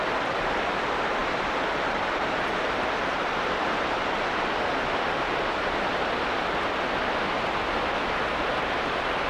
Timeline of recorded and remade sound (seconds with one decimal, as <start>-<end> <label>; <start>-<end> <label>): 0.0-9.3 recorded

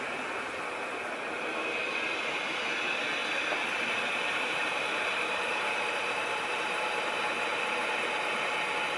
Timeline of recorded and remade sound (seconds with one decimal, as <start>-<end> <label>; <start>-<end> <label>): 0.0-3.2 recorded; 3.2-7.6 remade; 7.6-9.0 recorded

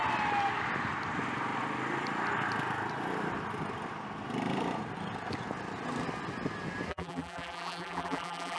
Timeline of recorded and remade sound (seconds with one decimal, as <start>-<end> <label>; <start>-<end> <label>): 0.0-6.9 recorded; 6.9-8.6 remade

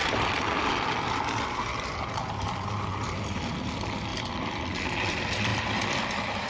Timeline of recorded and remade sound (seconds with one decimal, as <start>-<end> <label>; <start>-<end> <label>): 0.0-4.1 remade; 4.1-4.8 recorded; 4.8-6.5 remade

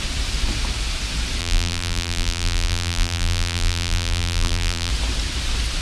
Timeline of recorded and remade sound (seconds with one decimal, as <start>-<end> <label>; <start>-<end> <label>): 0.0-1.4 recorded; 1.4-4.9 remade; 4.9-5.8 recorded

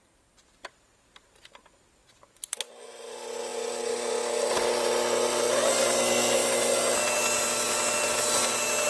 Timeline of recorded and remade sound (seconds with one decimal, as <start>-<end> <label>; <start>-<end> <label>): 0.0-2.0 recorded; 2.0-2.8 remade; 2.8-8.9 recorded

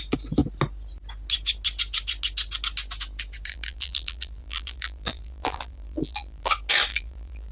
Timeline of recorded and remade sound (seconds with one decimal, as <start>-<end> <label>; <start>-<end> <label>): 0.0-3.5 recorded; 3.5-6.5 remade; 6.5-6.9 recorded; 6.9-7.5 remade